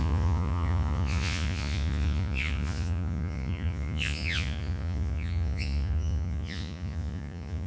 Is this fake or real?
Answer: fake